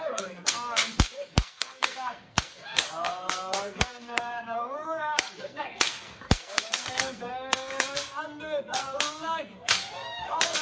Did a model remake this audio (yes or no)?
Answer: yes